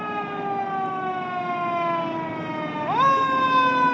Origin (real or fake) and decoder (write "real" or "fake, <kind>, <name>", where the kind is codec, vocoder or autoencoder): real